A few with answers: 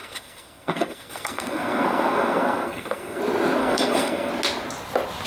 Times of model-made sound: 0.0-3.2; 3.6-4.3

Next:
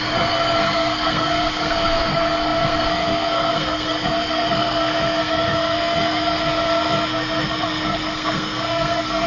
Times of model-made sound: 0.0-9.3

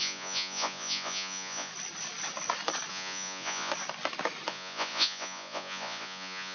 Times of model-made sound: 0.0-1.7; 2.9-3.7; 4.5-6.5